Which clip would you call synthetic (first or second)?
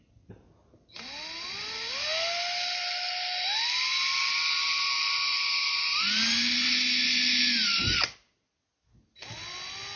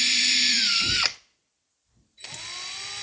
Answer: second